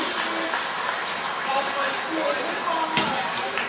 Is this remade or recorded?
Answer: recorded